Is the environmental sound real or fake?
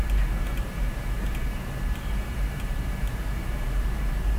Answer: fake